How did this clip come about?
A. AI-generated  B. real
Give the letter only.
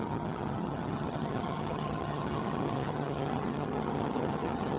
A